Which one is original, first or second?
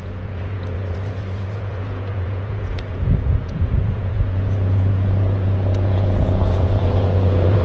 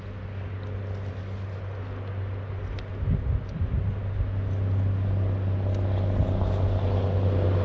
second